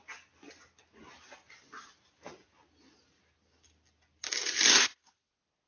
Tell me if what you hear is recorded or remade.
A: recorded